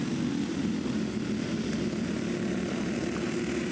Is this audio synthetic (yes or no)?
no